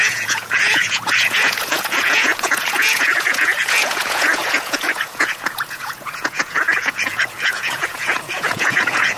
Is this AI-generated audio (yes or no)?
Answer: yes